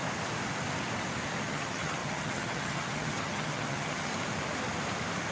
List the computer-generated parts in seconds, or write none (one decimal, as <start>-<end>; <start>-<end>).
1.4-4.1